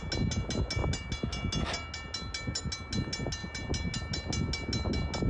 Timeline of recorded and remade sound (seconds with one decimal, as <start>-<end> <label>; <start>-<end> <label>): 0.0-5.3 recorded